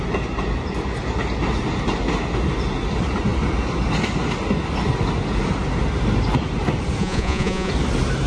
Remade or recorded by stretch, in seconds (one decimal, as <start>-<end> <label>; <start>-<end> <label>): 0.0-7.0 recorded; 7.0-7.7 remade; 7.7-8.3 recorded